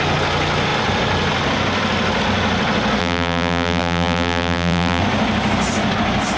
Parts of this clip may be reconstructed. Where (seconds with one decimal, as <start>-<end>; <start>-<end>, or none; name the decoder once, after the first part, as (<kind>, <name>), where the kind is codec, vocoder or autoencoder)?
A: 3.0-5.0 (vocoder, BigVGAN v2)